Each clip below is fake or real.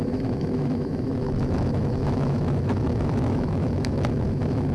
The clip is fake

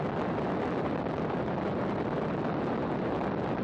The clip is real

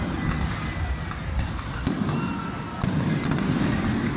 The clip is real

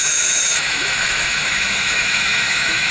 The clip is fake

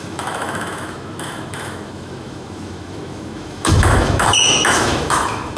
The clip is fake